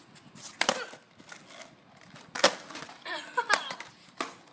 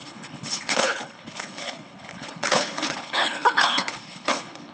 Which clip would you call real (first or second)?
first